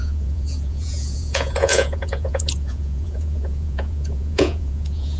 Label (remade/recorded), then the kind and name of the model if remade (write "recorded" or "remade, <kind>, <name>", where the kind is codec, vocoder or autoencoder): remade, vocoder, Vocos